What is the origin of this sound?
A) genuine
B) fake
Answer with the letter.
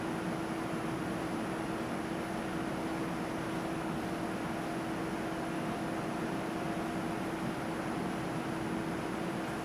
A